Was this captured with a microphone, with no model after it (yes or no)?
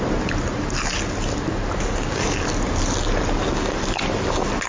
yes